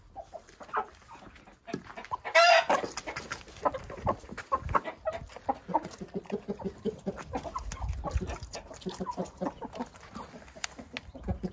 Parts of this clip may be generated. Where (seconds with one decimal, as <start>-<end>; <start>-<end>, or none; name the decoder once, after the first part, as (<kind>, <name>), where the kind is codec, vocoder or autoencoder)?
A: 5.7-6.2 (vocoder, Vocos)